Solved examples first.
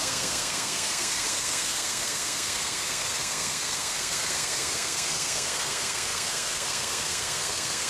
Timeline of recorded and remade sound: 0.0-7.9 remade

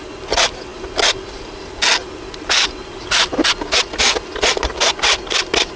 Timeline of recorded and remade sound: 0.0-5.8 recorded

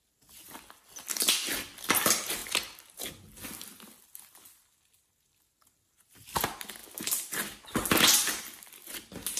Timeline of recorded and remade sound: 0.0-9.4 recorded

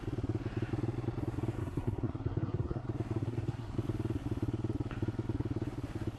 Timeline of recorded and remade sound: 0.0-1.6 recorded; 1.6-2.8 remade; 2.8-3.2 recorded; 3.2-3.7 remade; 3.7-6.2 recorded

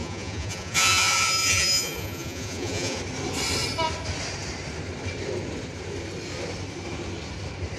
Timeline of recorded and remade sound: 0.0-3.0 remade; 3.0-7.8 recorded